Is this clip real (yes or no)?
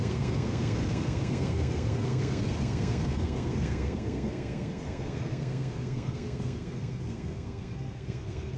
no